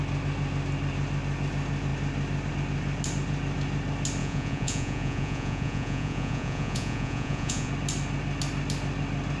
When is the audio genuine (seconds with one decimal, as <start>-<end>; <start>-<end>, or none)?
0.0-4.2; 7.7-9.4